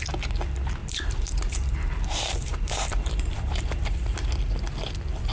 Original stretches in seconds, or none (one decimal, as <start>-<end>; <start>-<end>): 0.0-0.8; 4.0-5.3